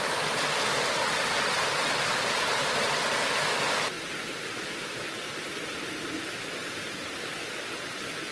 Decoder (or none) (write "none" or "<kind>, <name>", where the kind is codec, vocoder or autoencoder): none